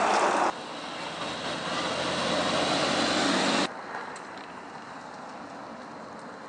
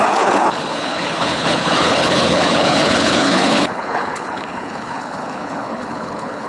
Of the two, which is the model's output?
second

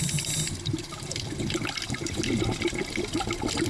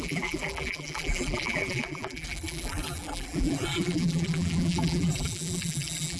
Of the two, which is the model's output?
second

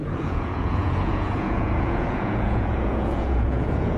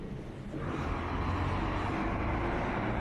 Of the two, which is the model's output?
first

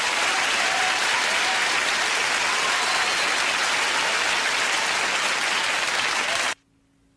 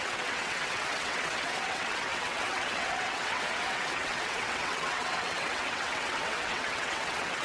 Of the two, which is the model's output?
second